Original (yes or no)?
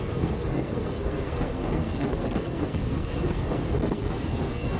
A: no